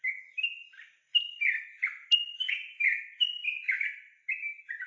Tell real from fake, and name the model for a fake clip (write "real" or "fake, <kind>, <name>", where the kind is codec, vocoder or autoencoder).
real